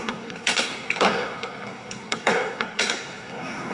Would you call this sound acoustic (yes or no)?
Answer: no